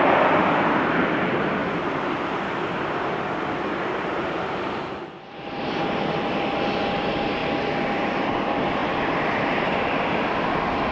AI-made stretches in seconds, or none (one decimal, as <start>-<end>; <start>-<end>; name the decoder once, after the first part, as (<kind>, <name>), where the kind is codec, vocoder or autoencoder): 0.0-7.4 (vocoder, BigVGAN v2); 8.3-10.9